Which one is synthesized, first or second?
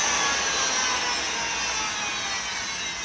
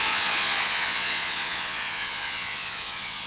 second